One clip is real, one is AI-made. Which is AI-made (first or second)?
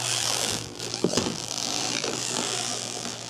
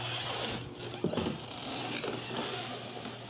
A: first